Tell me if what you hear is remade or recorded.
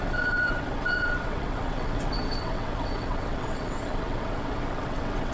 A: remade